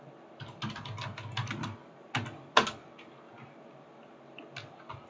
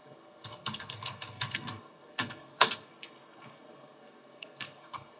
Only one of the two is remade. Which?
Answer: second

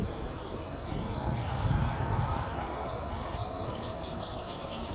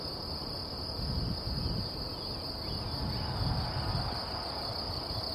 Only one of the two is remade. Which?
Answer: first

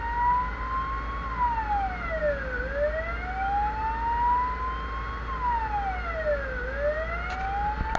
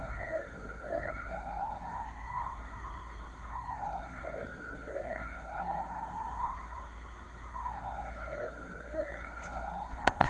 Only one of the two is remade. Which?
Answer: second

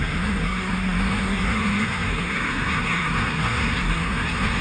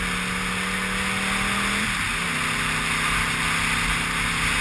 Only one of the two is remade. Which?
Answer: first